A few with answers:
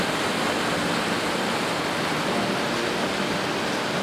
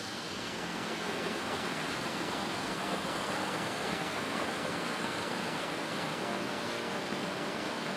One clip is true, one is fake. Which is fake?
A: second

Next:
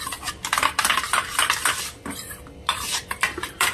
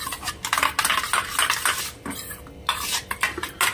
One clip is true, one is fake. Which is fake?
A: first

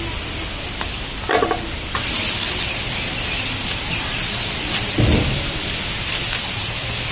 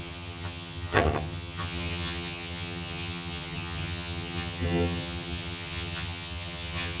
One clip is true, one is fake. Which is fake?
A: second